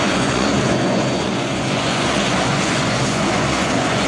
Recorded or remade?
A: remade